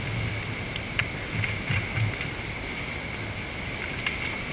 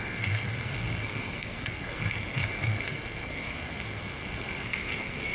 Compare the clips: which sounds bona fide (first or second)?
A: first